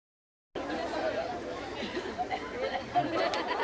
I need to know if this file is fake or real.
real